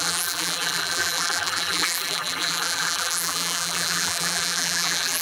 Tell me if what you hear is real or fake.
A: fake